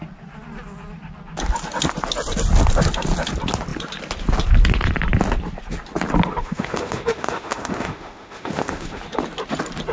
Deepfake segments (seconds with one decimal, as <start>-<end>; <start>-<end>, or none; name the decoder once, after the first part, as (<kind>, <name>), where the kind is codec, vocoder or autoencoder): 6.4-9.0 (autoencoder, DAC-VAE)